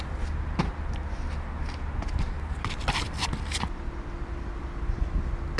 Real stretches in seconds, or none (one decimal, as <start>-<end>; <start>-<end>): 0.0-5.6